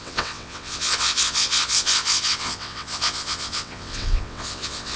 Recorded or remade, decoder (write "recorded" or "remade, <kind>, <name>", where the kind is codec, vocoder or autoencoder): remade, vocoder, WaveNeXt